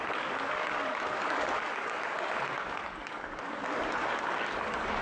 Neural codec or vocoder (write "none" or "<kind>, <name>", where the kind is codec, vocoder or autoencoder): codec, DAC